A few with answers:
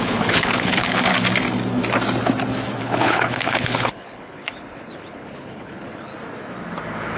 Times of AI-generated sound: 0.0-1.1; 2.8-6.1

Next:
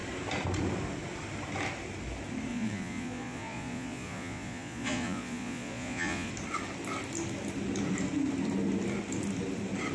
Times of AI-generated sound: 2.5-6.3

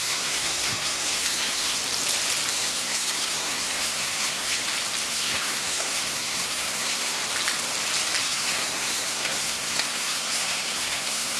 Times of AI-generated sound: 0.0-1.8; 2.5-4.6; 5.1-7.2; 8.2-11.4

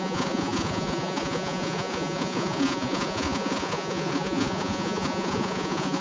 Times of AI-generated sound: 0.0-6.0

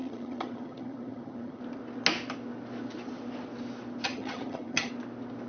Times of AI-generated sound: 0.0-1.6; 4.1-4.9

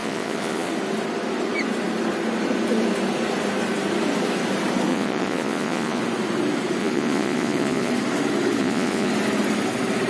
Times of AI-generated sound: 0.0-0.7; 4.9-6.0; 6.8-7.9; 8.6-9.1

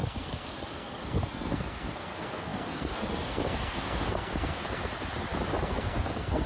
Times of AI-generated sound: 0.0-4.9; 5.6-6.5

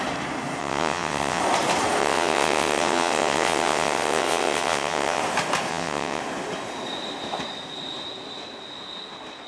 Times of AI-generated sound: 0.6-1.4; 2.0-5.2; 5.7-6.2